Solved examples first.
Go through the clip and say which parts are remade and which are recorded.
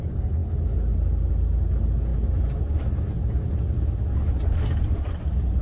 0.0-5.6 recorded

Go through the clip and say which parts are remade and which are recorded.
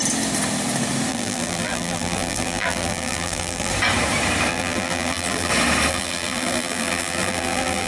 0.0-1.1 recorded; 1.1-3.7 remade; 3.7-4.5 recorded; 4.5-5.5 remade; 5.5-5.9 recorded; 5.9-7.9 remade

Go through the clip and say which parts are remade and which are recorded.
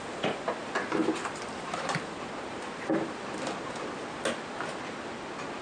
0.0-0.6 recorded; 0.6-3.9 remade; 3.9-5.6 recorded